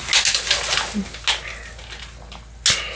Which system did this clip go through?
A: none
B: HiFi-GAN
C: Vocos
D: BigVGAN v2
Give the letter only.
A